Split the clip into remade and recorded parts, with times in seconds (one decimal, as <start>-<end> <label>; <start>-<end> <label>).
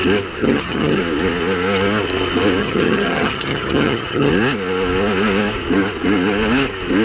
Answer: 0.0-0.4 recorded; 0.4-1.0 remade; 1.0-2.6 recorded; 2.6-4.3 remade; 4.3-7.0 recorded